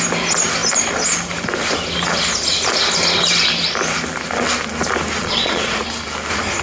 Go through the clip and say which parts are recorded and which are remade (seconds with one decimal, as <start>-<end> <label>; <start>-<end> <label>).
0.0-5.2 recorded; 5.2-5.8 remade; 5.8-6.6 recorded